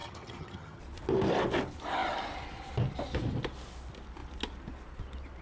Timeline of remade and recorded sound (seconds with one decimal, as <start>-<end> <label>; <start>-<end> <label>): 0.0-0.8 remade; 0.8-5.4 recorded